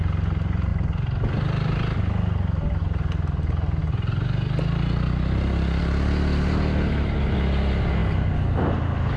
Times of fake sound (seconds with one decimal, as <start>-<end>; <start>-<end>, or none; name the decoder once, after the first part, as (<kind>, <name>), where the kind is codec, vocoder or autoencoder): none